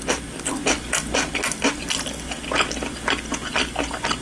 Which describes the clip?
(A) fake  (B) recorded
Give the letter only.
B